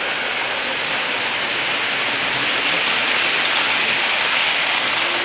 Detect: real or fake real